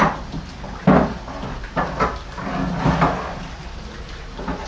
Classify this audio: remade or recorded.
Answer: recorded